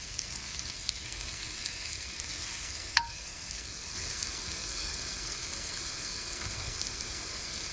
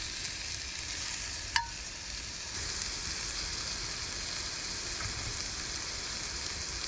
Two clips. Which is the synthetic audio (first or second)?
first